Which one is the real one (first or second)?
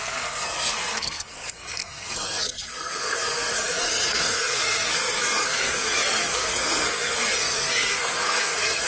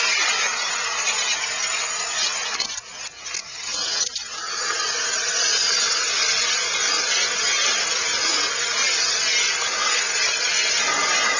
second